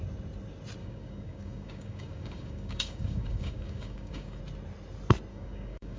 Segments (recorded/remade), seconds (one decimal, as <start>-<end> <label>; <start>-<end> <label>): 0.0-0.8 recorded; 0.8-4.4 remade; 4.4-5.3 recorded; 5.3-6.0 remade